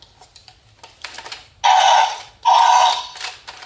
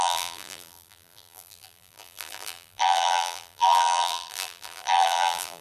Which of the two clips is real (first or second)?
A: first